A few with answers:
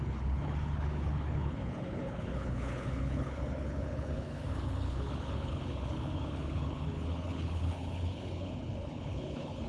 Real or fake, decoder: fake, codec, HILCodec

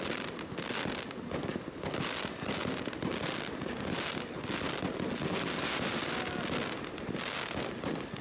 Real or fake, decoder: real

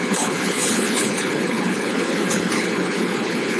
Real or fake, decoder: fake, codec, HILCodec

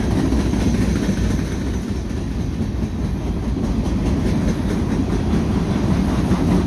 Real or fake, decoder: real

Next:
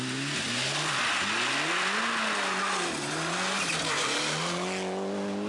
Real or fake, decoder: real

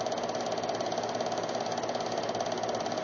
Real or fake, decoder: real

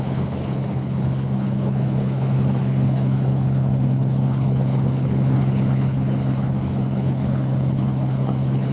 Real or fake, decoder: fake, codec, HILCodec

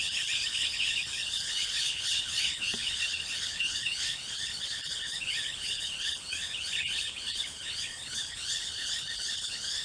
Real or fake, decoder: fake, codec, HILCodec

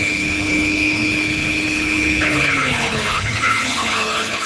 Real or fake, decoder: fake, codec, HILCodec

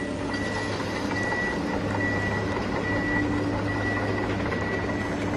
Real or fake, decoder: real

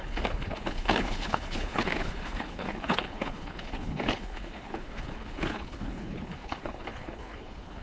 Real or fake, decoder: fake, codec, HILCodec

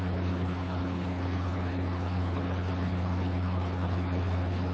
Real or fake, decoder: fake, codec, HILCodec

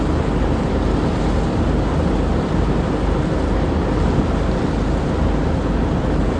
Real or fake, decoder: real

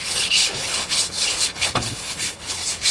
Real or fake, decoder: fake, codec, HILCodec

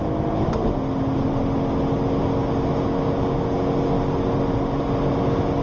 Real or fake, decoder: real